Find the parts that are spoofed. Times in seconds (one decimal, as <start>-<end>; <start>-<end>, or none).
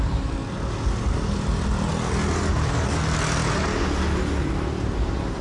none